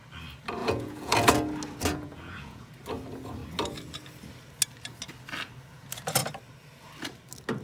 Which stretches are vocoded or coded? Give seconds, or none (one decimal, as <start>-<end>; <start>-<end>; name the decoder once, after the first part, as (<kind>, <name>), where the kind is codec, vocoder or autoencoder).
0.6-1.3 (vocoder, Vocos); 1.9-2.7